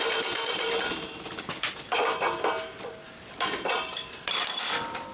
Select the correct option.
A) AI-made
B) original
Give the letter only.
B